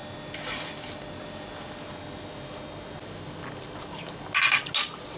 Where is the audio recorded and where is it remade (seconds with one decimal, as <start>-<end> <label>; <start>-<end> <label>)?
0.0-5.2 recorded